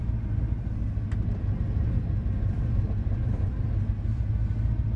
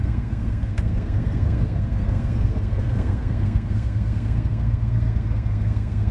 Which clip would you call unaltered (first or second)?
first